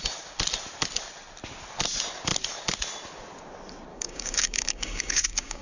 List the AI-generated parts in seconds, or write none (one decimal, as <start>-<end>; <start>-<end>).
3.9-5.6